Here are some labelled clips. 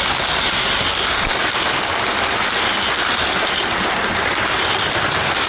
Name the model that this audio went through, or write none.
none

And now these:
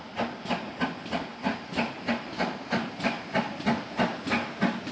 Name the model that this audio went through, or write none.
none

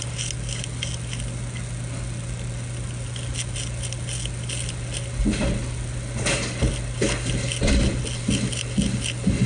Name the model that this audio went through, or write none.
none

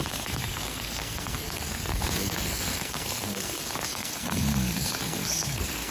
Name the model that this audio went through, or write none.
codec, SNAC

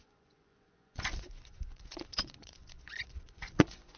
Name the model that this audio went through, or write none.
vocoder, Vocos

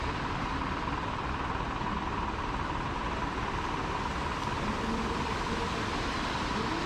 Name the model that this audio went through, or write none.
none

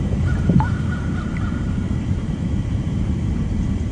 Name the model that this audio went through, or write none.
vocoder, BigVGAN v2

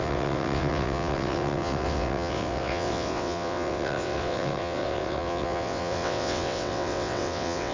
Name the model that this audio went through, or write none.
vocoder, WaveNeXt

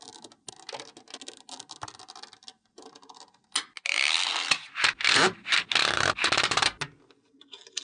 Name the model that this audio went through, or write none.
none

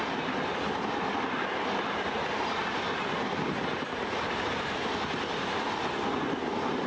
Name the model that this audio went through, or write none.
none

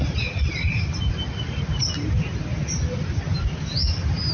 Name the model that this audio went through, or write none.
none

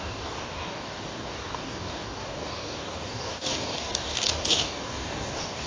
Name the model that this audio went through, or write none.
codec, DAC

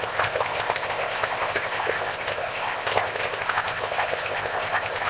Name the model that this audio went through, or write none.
codec, ZipCodec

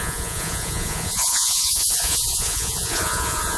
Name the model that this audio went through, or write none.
vocoder, Vocos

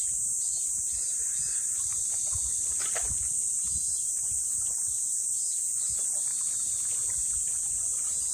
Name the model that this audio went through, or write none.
none